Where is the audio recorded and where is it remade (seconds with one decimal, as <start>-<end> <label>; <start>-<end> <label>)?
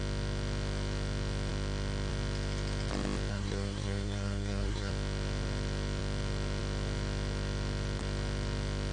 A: 0.0-3.3 recorded; 3.3-4.9 remade; 4.9-8.9 recorded